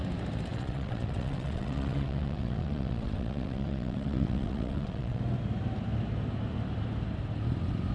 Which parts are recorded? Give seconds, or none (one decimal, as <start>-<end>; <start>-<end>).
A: 0.0-0.5; 5.2-7.9